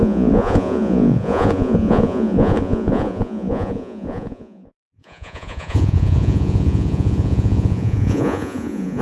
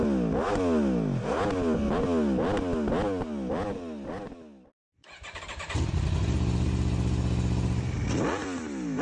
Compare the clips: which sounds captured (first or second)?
second